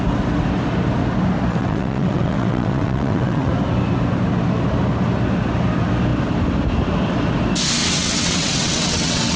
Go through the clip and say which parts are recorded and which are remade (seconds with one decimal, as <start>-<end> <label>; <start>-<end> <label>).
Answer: 0.0-1.5 recorded; 1.5-3.5 remade; 3.5-7.8 recorded; 7.8-9.4 remade